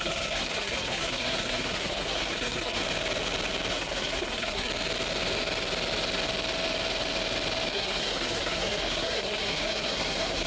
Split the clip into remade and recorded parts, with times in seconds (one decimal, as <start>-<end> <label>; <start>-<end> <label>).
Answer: 0.0-2.8 remade; 2.8-3.7 recorded; 3.7-4.7 remade; 4.7-7.7 recorded; 7.7-10.5 remade